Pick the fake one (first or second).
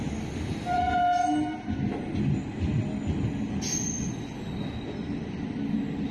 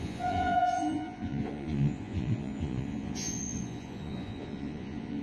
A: second